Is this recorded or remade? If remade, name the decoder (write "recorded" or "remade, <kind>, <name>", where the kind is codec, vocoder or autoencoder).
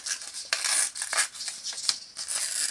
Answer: recorded